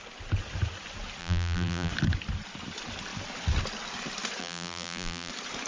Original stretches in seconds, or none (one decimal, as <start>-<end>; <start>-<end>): 0.0-1.2; 1.9-4.4; 5.3-5.7